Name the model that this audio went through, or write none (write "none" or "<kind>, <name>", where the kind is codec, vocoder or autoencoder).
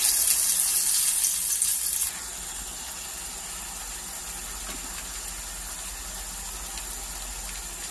none